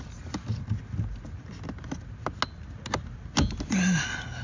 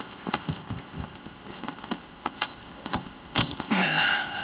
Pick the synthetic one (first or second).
second